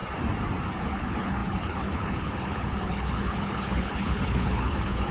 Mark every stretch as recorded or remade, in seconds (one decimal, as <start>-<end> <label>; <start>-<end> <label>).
0.0-0.8 recorded; 0.8-5.1 remade